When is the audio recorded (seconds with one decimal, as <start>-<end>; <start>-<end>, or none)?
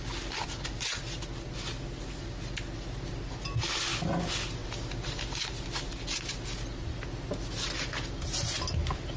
0.0-9.2